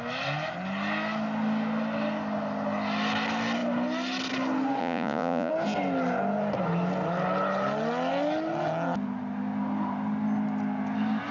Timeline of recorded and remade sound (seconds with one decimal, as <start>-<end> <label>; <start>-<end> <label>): 0.0-4.8 recorded; 4.8-5.5 remade; 5.5-11.3 recorded